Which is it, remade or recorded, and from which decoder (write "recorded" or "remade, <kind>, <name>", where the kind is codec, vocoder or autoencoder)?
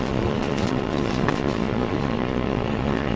remade, vocoder, Vocos